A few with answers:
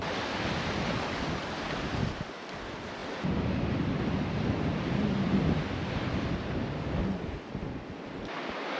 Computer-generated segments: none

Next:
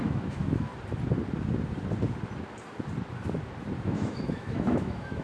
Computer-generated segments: 0.0-0.7 (autoencoder, DAC-VAE); 3.8-5.2

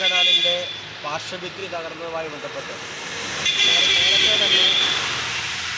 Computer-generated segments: none